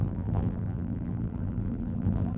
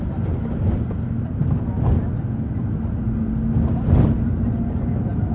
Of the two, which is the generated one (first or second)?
first